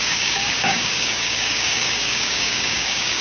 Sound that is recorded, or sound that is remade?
remade